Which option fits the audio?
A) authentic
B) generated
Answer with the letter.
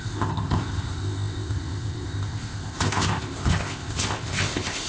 B